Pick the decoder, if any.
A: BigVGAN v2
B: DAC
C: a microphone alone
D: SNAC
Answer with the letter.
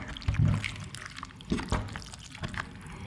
C